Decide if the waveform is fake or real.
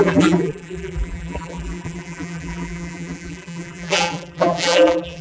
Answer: fake